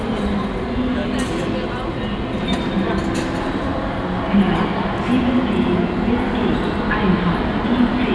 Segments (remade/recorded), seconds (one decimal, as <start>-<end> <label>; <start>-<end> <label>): 0.0-8.1 recorded